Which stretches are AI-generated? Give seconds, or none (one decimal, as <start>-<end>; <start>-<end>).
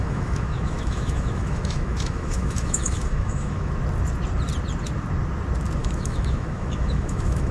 0.0-3.7; 5.8-7.5